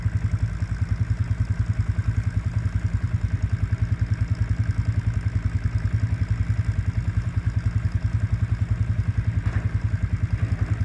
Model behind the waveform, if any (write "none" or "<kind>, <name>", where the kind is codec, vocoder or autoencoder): none